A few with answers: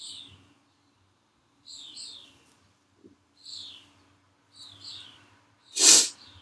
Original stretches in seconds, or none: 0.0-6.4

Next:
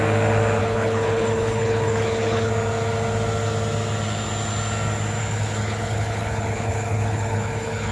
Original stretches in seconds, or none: 0.0-0.6; 2.5-5.2

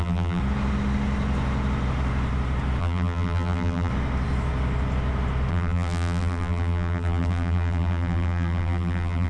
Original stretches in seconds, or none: 0.4-2.8; 3.9-5.5